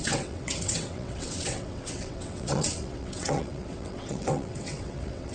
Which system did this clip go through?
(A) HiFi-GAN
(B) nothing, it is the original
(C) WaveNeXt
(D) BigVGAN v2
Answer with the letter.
C